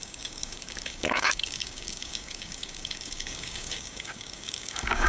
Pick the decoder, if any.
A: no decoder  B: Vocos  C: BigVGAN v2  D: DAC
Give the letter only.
D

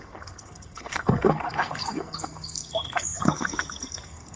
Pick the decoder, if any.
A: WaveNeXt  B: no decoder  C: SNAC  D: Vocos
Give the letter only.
C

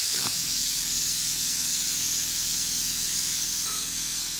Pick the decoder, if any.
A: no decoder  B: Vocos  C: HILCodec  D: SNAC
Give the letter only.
D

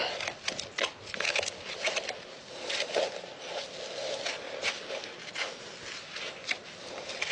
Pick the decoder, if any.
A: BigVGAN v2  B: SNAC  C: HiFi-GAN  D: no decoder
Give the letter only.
D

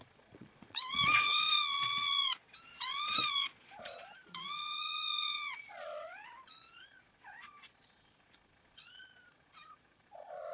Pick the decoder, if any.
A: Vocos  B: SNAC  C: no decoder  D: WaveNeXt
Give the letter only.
A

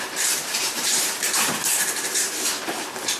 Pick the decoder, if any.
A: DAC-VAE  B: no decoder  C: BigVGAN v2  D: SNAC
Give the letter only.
C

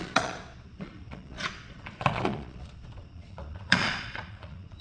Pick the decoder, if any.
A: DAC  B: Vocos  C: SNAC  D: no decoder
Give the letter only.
B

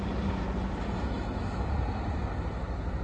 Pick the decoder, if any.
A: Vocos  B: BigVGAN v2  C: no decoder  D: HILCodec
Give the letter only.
C